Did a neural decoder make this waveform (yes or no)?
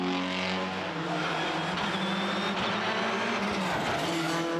no